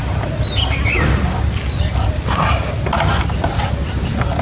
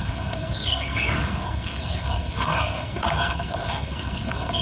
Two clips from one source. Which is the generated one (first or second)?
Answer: second